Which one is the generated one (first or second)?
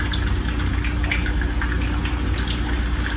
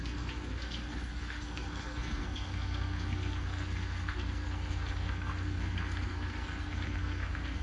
second